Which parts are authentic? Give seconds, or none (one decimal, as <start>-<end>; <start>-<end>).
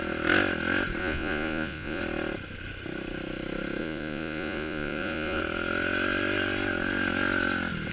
0.0-1.0; 2.0-3.8; 5.4-7.9